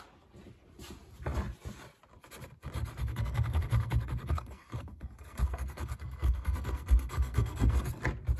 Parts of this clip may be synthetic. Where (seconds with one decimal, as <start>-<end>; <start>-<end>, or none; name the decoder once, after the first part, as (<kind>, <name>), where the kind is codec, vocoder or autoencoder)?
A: 3.0-8.0 (codec, SNAC)